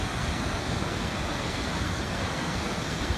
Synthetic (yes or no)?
yes